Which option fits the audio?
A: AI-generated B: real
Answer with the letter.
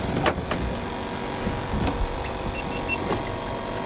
B